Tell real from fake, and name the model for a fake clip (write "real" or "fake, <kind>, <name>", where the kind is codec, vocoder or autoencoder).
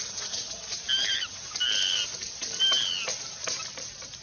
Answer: real